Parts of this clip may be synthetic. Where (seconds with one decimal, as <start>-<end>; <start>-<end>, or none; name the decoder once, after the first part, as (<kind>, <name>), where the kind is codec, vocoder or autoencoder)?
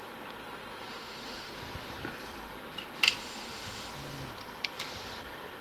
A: 0.9-1.5 (autoencoder, DAC-VAE); 3.2-3.9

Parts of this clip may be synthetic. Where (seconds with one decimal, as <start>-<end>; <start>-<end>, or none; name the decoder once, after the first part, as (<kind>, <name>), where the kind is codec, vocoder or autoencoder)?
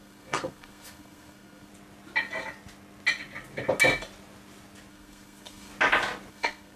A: 0.0-1.7 (codec, SNAC); 4.9-5.7; 6.3-6.8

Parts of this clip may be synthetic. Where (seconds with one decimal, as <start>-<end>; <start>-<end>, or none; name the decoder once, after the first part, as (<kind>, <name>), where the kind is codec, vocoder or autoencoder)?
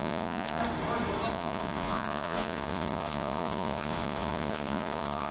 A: 0.0-0.6 (vocoder, Vocos); 1.3-5.3